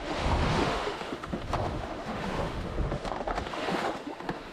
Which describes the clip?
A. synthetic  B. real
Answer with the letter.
A